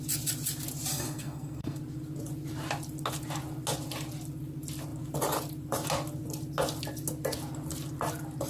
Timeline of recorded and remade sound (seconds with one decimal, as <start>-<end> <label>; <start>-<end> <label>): 0.0-0.9 recorded; 0.9-1.8 remade; 1.8-8.5 recorded